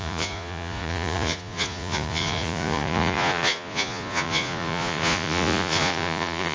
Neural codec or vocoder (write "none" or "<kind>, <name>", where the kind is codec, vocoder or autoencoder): vocoder, Vocos